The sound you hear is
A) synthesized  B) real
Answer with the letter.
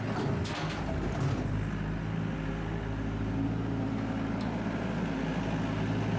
B